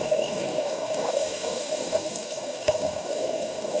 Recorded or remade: remade